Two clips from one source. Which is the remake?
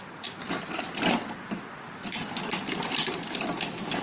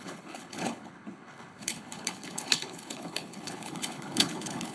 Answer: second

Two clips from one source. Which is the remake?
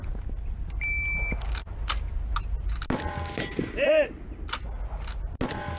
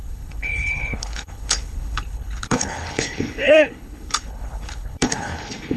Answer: second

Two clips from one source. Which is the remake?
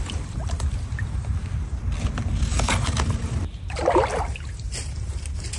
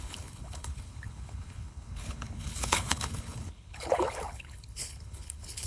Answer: second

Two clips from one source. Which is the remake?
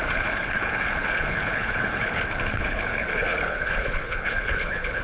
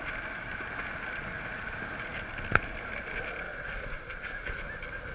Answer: first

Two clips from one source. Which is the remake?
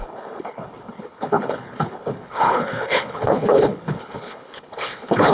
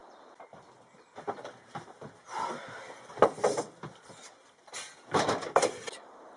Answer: first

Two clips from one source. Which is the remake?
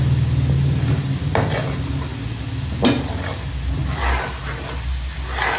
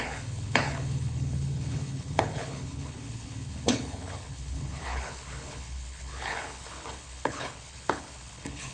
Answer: second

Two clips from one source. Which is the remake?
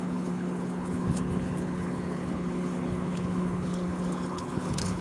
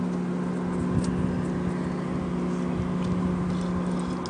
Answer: first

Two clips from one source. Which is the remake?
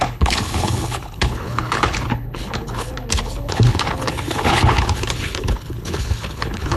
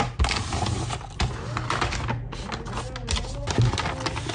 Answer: first